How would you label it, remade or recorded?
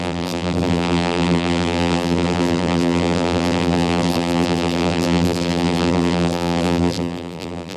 remade